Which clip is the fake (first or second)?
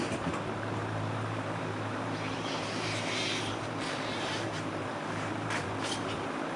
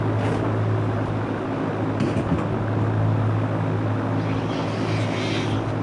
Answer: first